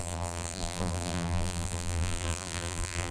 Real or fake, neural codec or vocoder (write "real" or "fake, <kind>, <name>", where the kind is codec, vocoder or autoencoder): fake, vocoder, BigVGAN v2